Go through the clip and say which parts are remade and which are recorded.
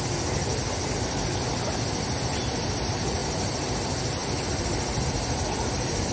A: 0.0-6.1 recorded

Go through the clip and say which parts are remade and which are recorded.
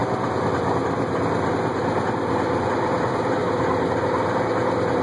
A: 0.0-5.0 recorded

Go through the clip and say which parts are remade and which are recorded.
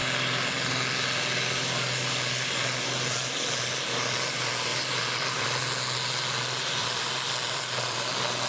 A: 0.0-4.7 recorded; 4.7-5.6 remade; 5.6-6.8 recorded; 6.8-8.1 remade; 8.1-8.5 recorded